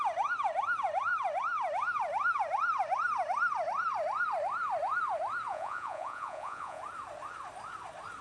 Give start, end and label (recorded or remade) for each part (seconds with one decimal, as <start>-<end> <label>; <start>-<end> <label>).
0.0-5.5 recorded; 5.5-6.8 remade; 6.8-8.2 recorded